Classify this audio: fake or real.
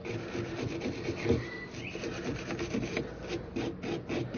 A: real